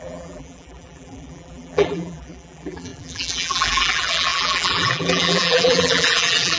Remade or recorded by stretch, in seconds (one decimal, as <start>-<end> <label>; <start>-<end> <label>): 0.0-6.6 remade